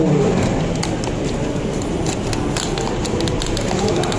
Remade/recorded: recorded